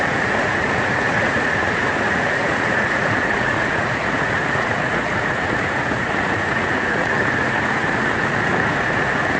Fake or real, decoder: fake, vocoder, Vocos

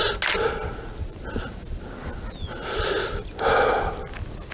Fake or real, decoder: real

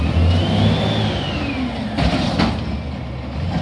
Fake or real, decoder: real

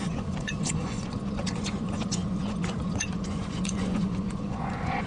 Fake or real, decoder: fake, vocoder, Vocos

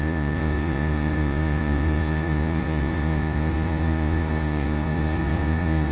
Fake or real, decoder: fake, vocoder, Vocos